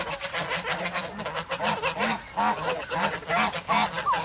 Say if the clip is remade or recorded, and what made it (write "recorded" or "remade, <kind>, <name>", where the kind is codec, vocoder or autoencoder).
recorded